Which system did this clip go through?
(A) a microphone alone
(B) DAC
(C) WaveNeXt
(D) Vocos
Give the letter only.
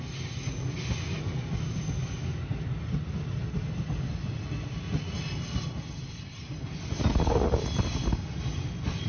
A